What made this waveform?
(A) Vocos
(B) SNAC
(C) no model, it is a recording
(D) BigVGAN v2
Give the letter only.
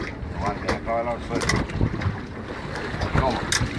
C